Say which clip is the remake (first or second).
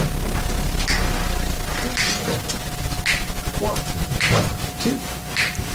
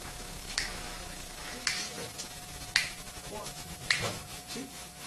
second